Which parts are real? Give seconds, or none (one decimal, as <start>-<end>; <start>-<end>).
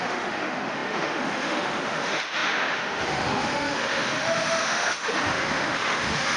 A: none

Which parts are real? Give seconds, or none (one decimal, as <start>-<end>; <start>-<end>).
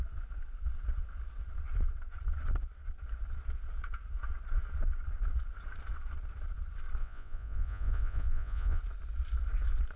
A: 0.0-7.0; 8.8-10.0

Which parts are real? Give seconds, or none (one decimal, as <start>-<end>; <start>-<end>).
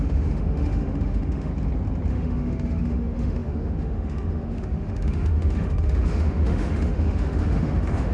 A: 1.5-2.1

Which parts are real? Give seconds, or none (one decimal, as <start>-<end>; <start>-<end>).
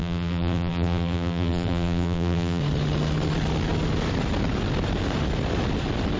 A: 2.6-6.2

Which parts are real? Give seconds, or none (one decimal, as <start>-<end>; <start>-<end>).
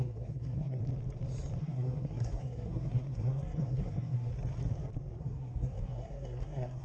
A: 0.8-1.6; 4.3-5.2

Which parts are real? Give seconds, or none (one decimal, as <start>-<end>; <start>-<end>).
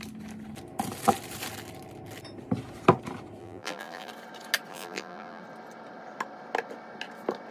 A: 0.0-3.4; 4.1-4.7; 5.4-7.5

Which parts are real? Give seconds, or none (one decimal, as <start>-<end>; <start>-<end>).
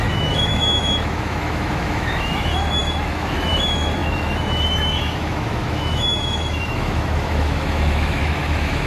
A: none